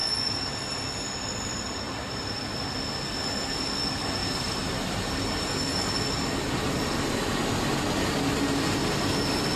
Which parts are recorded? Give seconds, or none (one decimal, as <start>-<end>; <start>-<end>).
0.0-4.2; 5.4-9.6